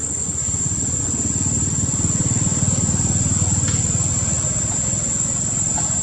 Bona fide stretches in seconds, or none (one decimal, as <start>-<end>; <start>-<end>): 1.0-6.0